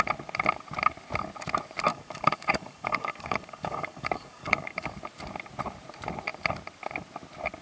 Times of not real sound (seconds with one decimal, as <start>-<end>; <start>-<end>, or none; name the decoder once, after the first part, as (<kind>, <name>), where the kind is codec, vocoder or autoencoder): 1.9-4.9 (codec, DAC)